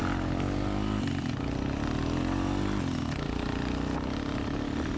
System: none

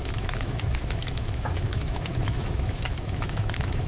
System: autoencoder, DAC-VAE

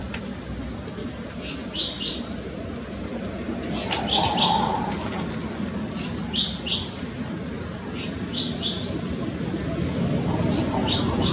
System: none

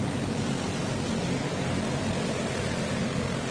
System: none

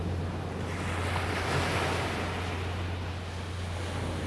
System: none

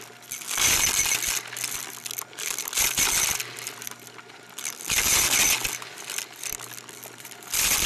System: none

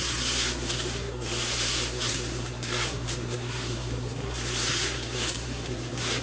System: codec, SNAC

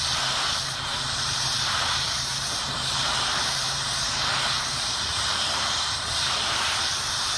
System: vocoder, BigVGAN v2